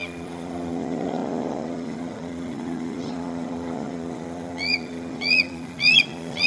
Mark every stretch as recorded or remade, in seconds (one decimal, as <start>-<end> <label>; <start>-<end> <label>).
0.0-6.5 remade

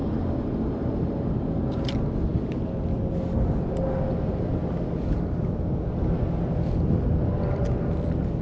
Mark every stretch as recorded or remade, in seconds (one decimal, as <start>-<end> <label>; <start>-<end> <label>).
0.0-1.8 remade; 1.8-8.4 recorded

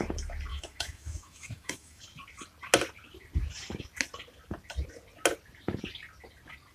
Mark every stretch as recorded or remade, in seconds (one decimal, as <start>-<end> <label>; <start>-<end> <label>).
0.0-0.5 recorded; 0.5-2.0 remade; 2.0-6.7 recorded

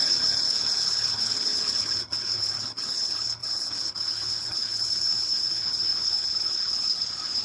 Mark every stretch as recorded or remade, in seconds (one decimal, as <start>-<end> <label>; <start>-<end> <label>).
0.0-7.4 remade

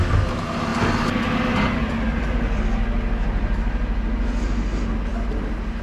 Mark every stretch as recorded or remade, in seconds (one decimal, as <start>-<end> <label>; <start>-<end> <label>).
0.0-5.8 recorded

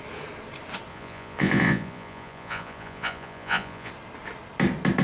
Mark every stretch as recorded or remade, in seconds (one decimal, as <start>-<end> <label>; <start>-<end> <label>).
0.0-0.9 recorded; 0.9-3.9 remade; 3.9-5.0 recorded

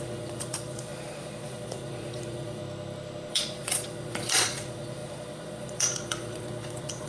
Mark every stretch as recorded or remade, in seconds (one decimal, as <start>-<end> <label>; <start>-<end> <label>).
0.0-2.6 remade; 2.6-3.3 recorded; 3.3-7.1 remade

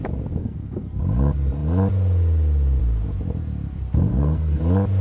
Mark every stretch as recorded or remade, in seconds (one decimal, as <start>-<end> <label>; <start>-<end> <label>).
0.0-0.4 recorded; 0.4-1.0 remade; 1.0-4.1 recorded; 4.1-4.6 remade; 4.6-5.0 recorded